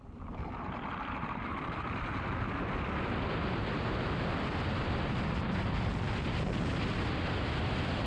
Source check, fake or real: real